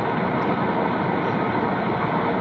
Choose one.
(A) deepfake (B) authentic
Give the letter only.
B